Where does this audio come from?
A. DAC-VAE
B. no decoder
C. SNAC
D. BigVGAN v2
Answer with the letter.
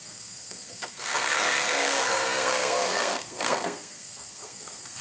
C